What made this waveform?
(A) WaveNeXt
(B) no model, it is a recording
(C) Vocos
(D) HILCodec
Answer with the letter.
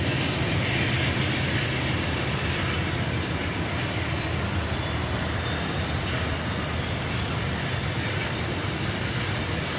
B